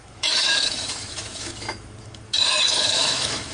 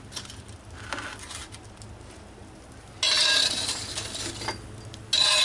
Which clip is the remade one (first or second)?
first